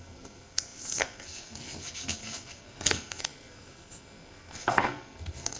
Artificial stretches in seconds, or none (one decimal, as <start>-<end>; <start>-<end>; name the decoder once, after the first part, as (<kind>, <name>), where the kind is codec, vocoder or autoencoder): 0.0-5.6 (codec, SNAC)

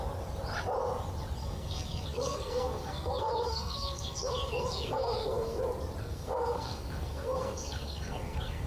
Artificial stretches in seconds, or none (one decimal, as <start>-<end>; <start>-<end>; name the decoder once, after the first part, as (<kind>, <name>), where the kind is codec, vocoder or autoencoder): 1.4-5.6 (codec, SNAC); 6.0-8.7